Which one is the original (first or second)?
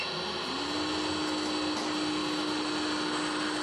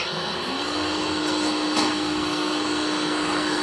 first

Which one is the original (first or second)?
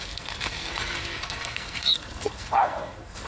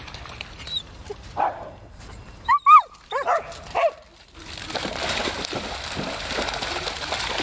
second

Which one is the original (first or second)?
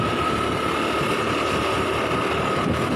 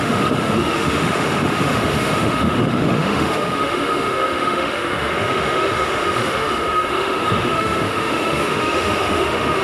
first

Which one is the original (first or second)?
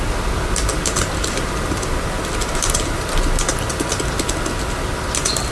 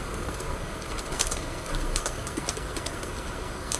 first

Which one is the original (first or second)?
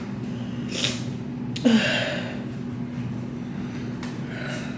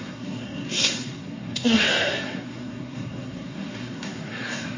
first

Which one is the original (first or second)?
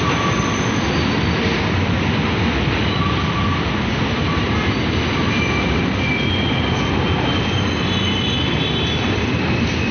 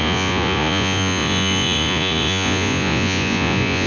first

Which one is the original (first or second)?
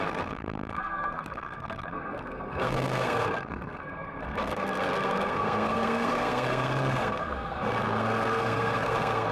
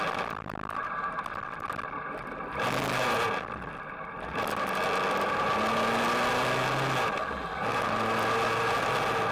second